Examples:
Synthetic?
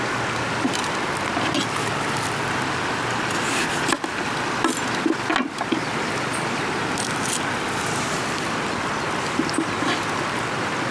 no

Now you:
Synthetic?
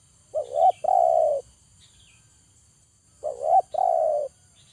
no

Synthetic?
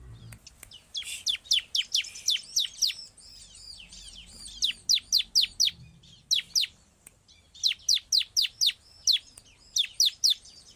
no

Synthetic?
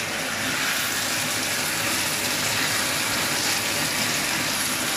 no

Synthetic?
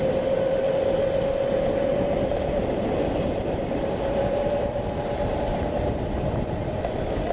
no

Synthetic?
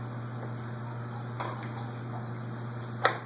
no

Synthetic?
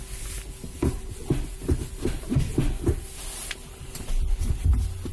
no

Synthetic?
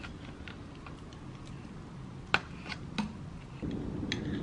no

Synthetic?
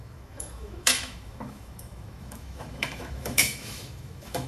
yes